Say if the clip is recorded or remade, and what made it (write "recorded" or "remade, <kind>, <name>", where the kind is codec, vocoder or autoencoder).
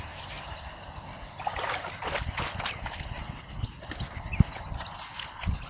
recorded